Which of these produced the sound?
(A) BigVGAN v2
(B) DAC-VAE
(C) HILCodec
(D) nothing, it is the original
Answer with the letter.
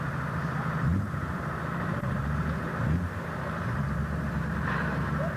A